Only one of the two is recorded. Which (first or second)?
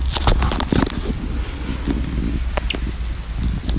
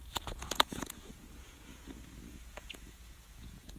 first